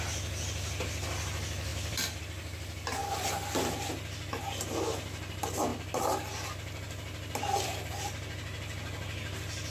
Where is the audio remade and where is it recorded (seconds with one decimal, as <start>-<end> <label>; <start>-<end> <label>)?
0.0-1.7 recorded; 1.7-2.2 remade; 2.2-5.7 recorded; 5.7-7.9 remade; 7.9-9.7 recorded